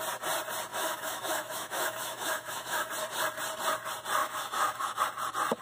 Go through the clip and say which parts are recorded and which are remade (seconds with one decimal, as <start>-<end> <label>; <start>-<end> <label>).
0.0-0.7 recorded; 0.7-2.9 remade; 2.9-4.2 recorded; 4.2-5.0 remade; 5.0-5.6 recorded